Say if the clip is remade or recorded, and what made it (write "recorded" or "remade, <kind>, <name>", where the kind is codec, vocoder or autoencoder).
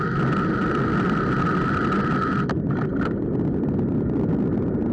recorded